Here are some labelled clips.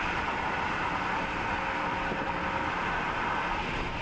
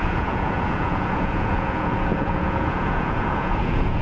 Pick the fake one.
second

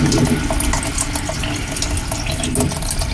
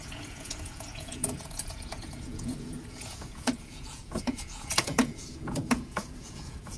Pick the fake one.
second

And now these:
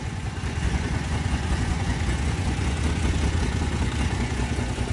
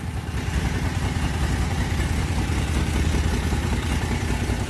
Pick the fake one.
first